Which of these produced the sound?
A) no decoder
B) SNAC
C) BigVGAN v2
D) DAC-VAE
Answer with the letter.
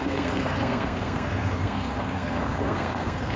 B